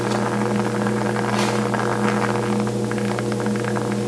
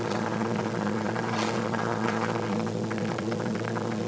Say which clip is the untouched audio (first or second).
first